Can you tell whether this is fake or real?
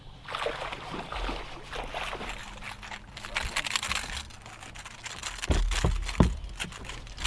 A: real